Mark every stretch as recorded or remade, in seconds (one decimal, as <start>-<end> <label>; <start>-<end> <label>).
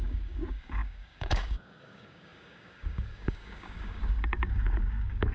0.0-5.3 remade